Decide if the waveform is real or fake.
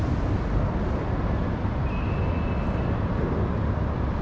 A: real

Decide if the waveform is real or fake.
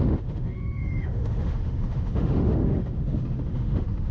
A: fake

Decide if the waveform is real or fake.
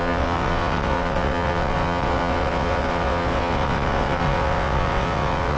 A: fake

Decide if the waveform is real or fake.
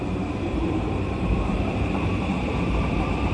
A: fake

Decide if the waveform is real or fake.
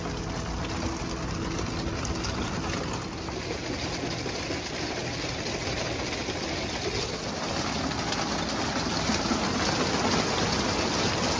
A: real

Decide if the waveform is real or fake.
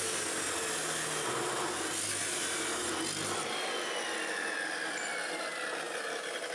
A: real